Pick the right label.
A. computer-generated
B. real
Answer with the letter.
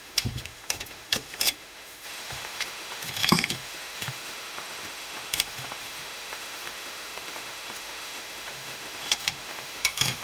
A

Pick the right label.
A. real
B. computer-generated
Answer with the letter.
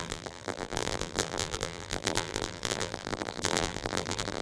B